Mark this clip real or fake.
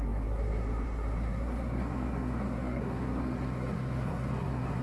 fake